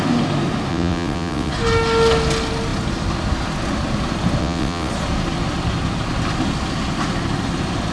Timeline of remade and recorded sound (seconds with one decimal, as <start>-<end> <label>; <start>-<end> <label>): 0.0-0.7 recorded; 0.7-1.5 remade; 1.5-4.4 recorded; 4.4-4.9 remade; 4.9-7.9 recorded